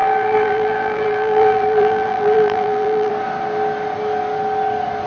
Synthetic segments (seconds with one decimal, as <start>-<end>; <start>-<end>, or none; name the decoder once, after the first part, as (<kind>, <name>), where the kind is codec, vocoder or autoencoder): 0.0-3.1 (vocoder, BigVGAN v2)